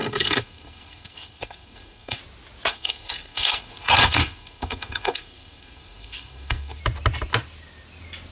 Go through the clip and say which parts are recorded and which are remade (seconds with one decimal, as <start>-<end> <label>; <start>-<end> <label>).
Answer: 0.0-2.2 remade; 2.2-2.7 recorded; 2.7-6.8 remade; 6.8-8.3 recorded